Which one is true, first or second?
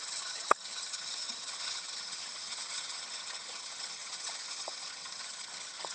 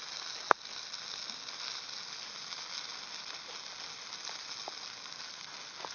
second